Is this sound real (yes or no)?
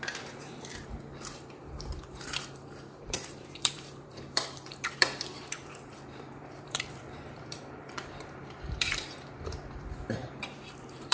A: no